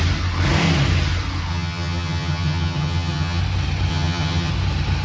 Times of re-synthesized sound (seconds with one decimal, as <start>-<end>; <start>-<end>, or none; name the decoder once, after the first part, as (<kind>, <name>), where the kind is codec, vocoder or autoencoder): 1.5-3.4 (vocoder, HiFi-GAN); 3.9-4.5

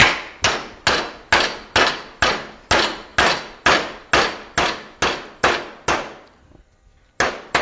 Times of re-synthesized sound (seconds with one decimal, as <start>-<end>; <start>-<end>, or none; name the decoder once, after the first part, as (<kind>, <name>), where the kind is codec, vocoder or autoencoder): none